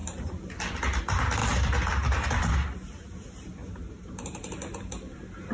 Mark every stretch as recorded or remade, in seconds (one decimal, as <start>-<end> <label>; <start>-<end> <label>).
0.0-1.4 recorded; 1.4-2.5 remade; 2.5-3.6 recorded; 3.6-4.4 remade; 4.4-5.5 recorded